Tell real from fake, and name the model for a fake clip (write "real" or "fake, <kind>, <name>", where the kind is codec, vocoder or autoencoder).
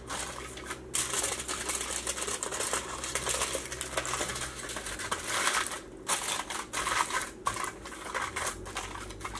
real